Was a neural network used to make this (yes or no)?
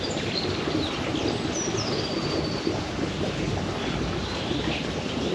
no